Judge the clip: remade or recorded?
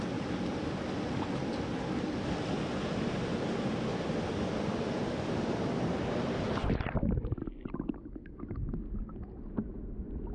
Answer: recorded